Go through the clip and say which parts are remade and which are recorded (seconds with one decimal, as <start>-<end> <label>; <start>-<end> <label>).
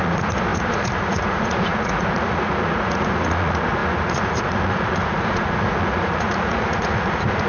0.0-7.5 remade